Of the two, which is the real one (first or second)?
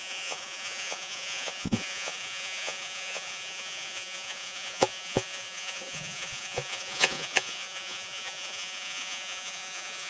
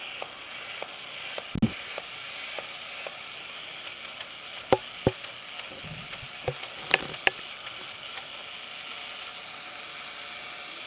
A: second